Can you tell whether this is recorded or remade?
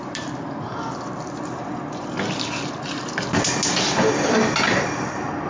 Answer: recorded